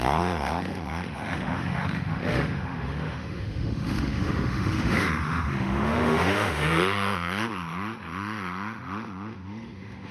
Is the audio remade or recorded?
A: remade